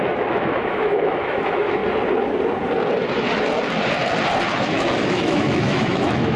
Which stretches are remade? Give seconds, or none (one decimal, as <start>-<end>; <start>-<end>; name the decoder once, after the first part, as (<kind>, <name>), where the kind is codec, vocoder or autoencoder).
0.0-1.8 (autoencoder, DAC-VAE); 4.6-6.4